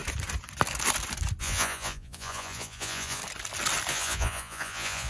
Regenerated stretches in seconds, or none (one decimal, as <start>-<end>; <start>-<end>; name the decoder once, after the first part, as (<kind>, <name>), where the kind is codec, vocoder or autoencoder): 1.4-3.2 (vocoder, Vocos); 3.9-5.1